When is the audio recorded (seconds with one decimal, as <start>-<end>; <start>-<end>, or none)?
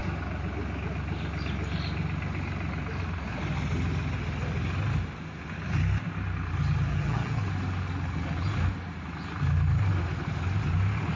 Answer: 0.0-6.9; 7.4-11.2